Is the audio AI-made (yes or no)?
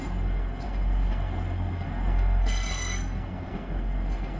yes